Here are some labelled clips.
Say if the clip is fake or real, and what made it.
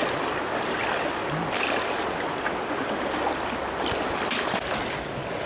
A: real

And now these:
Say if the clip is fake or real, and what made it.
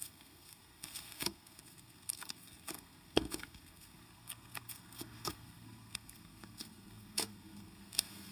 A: fake, codec, SNAC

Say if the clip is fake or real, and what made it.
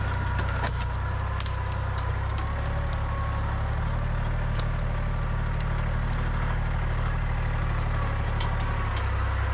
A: real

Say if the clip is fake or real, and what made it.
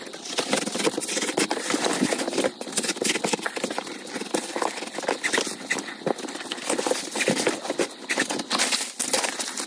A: real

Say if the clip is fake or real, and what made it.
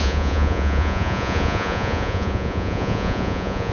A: fake, vocoder, Vocos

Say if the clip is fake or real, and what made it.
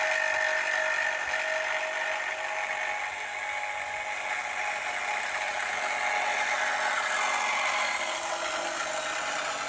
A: real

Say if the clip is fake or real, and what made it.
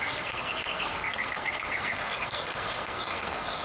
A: fake, codec, SNAC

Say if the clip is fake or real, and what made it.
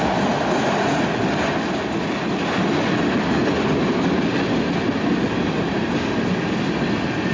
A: real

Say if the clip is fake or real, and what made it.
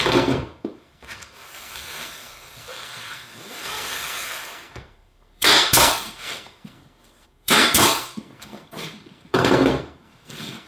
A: fake, codec, SNAC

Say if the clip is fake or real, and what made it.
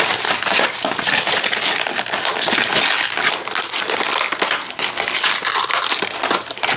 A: real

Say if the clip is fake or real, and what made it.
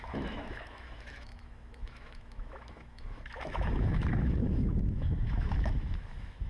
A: fake, autoencoder, DAC-VAE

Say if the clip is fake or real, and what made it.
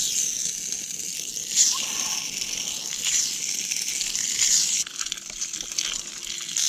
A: real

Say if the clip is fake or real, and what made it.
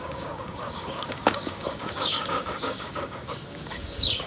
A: fake, codec, DAC